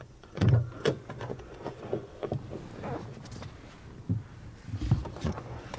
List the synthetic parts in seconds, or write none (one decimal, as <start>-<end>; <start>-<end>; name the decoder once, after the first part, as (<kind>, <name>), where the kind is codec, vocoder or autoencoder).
0.0-2.3 (vocoder, Vocos); 5.2-5.8